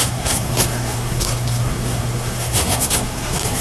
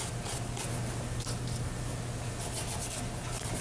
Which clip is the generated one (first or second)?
first